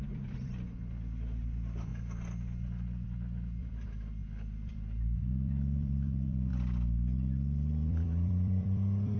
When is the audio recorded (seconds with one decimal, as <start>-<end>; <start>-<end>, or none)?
1.9-3.6; 6.5-7.9